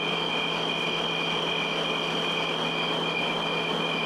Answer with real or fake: real